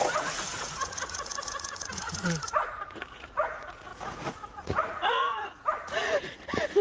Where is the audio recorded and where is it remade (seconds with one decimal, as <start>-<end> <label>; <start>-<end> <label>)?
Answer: 0.0-6.8 remade